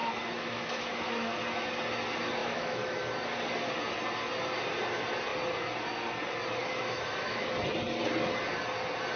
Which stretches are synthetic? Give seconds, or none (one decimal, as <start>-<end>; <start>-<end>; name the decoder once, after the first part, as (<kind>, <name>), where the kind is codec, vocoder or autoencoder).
0.0-1.4 (autoencoder, DAC-VAE); 2.4-3.0; 6.6-7.5